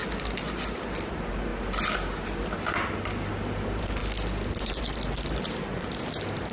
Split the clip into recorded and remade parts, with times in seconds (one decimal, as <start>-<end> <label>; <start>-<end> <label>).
0.0-1.1 recorded; 1.1-1.5 remade; 1.5-3.3 recorded; 3.3-4.0 remade; 4.0-4.6 recorded; 4.6-6.5 remade